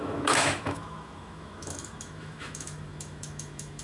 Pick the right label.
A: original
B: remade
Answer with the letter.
B